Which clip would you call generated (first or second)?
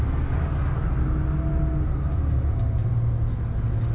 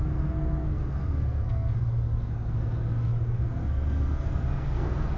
second